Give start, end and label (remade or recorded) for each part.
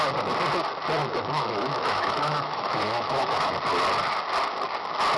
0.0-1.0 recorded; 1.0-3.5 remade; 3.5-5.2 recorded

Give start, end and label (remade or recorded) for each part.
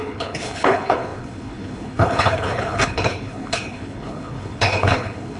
0.0-5.4 remade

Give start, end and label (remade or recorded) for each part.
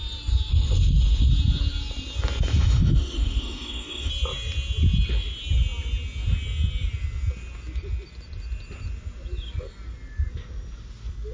0.0-0.5 recorded; 0.5-1.3 remade; 1.3-2.5 recorded; 2.5-4.1 remade; 4.1-11.3 recorded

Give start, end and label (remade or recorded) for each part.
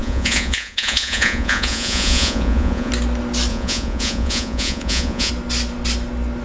0.0-2.9 remade; 2.9-3.5 recorded; 3.5-5.3 remade; 5.3-6.4 recorded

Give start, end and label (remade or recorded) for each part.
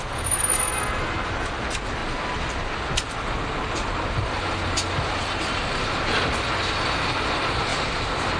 0.0-2.0 recorded; 2.0-4.5 remade; 4.5-7.7 recorded; 7.7-8.4 remade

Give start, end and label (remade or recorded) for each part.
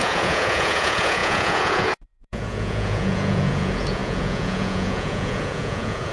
0.0-6.1 remade